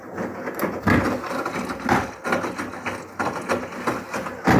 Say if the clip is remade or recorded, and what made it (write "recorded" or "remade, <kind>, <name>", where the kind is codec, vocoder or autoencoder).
recorded